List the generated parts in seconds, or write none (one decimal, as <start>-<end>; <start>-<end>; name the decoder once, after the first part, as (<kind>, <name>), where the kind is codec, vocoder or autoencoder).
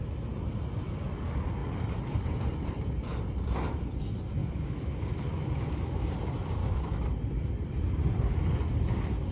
4.4-6.1 (autoencoder, DAC-VAE); 6.6-7.1